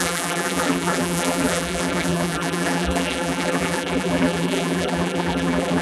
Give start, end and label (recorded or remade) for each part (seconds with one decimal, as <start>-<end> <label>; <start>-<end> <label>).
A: 0.0-5.8 remade